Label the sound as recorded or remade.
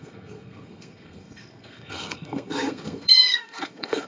remade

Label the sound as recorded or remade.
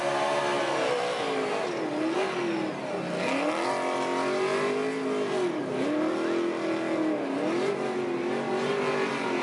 recorded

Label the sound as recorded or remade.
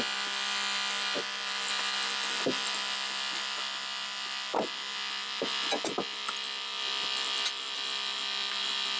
recorded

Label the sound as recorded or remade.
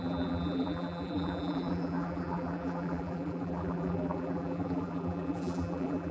remade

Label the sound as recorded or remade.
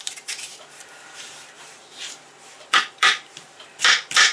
remade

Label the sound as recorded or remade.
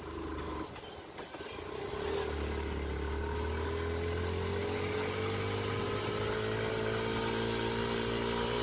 recorded